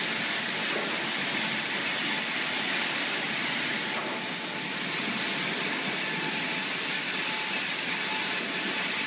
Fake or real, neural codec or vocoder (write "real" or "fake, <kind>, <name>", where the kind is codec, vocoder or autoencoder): real